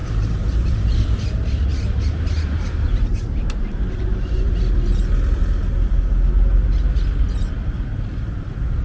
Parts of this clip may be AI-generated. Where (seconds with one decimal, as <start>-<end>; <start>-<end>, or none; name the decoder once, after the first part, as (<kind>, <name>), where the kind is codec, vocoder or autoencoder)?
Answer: 0.0-1.2 (vocoder, BigVGAN v2); 1.7-4.7